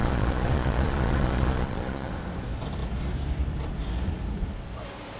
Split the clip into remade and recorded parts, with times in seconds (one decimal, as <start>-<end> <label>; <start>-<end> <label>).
0.0-2.1 remade; 2.1-5.2 recorded